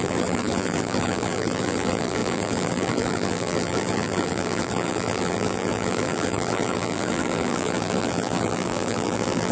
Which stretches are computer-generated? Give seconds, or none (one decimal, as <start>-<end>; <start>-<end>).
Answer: 0.0-9.5